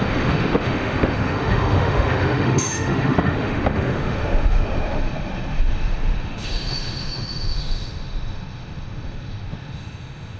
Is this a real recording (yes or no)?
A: no